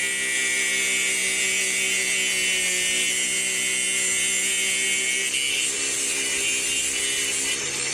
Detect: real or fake real